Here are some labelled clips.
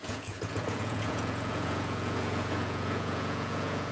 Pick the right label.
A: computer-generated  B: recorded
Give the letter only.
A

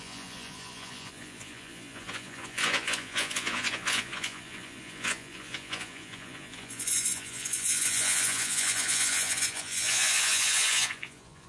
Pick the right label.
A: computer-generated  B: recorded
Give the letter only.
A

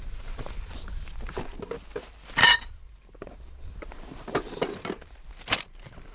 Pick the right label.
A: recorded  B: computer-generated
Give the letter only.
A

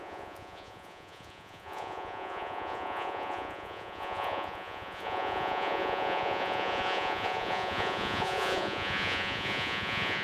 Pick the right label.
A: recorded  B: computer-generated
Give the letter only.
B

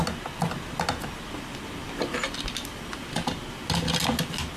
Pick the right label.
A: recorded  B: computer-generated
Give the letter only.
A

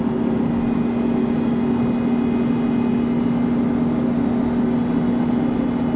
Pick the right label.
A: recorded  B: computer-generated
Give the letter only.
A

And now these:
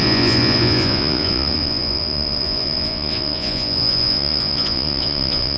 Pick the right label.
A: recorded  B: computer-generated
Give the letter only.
B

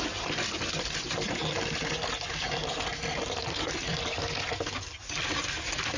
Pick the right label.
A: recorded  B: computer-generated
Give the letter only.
A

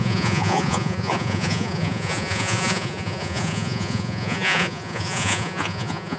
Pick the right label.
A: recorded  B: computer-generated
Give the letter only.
B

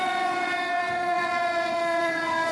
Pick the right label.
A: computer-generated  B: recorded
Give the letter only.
A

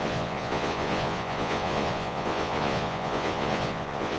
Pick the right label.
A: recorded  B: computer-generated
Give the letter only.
B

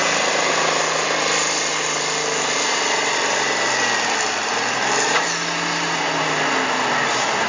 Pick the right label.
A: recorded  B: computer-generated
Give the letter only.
A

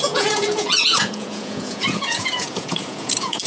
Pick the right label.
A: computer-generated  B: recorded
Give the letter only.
A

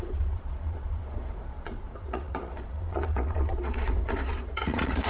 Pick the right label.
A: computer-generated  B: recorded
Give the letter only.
A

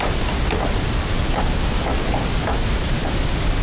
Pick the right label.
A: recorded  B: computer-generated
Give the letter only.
A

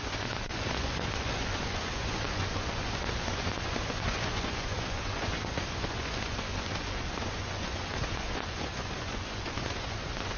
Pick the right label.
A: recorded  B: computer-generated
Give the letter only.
B